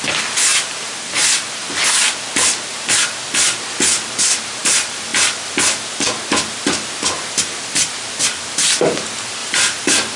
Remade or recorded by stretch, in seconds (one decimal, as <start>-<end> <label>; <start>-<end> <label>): 0.0-0.5 recorded; 0.5-1.1 remade; 1.1-9.4 recorded; 9.4-10.2 remade